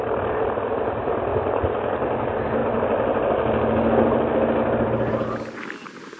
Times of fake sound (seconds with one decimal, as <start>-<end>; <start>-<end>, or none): none